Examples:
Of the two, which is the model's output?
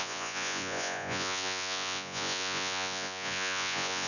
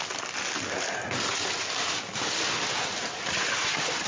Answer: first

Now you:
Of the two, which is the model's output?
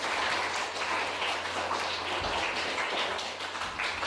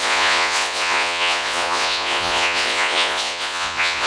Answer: second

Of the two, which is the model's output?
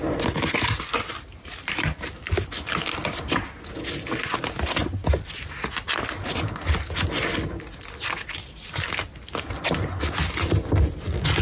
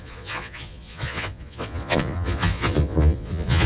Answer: second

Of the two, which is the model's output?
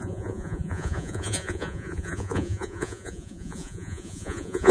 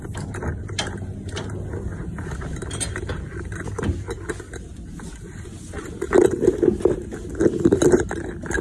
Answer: first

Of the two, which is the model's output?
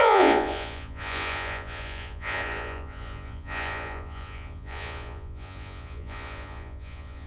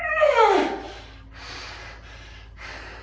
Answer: first